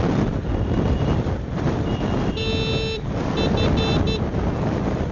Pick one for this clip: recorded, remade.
recorded